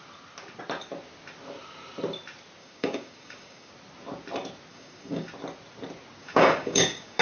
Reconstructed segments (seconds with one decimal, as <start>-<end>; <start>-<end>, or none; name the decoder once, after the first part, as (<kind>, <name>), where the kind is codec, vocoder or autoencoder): 2.6-3.7 (codec, DAC); 4.7-5.3; 6.2-7.2